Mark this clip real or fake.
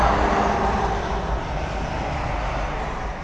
real